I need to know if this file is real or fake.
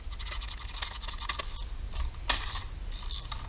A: real